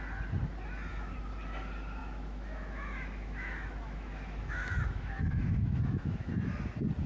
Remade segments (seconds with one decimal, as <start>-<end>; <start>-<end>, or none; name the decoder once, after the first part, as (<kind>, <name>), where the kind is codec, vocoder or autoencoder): 2.0-6.3 (autoencoder, DAC-VAE)